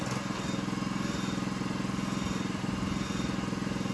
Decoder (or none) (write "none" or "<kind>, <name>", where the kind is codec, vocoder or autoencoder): none